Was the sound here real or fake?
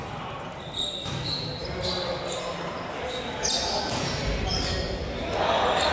real